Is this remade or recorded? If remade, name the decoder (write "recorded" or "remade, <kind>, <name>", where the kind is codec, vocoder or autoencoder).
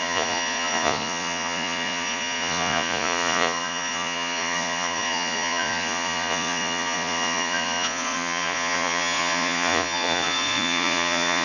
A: remade, vocoder, Vocos